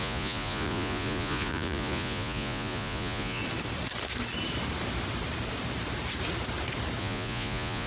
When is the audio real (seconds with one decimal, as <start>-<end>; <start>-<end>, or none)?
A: 3.4-7.0